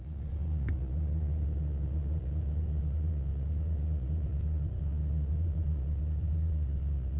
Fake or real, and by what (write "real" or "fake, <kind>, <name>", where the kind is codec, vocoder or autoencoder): fake, vocoder, Vocos